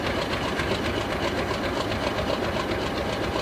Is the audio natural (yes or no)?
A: yes